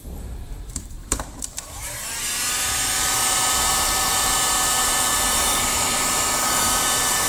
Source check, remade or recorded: remade